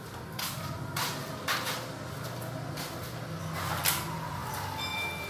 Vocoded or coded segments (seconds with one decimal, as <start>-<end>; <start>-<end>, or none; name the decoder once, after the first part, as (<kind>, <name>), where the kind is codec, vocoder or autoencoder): none